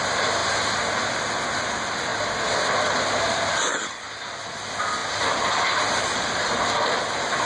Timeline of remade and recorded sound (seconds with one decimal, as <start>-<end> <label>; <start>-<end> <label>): 0.0-7.5 recorded